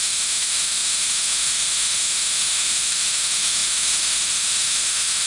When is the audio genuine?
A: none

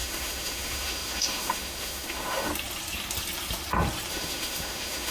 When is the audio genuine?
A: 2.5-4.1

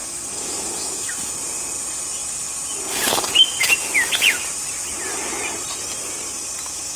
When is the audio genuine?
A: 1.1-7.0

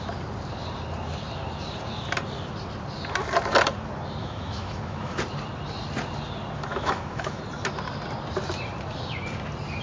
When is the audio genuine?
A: 0.0-4.2; 5.2-6.7; 7.4-9.8

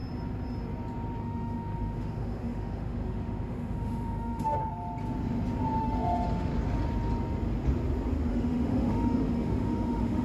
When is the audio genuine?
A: 0.0-1.2; 4.6-5.8; 6.5-8.3

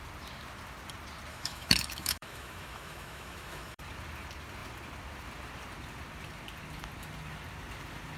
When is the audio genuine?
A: 0.0-1.3; 3.8-8.2

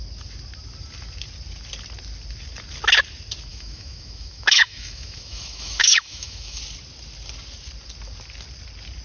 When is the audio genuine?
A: 0.0-3.5; 6.6-9.0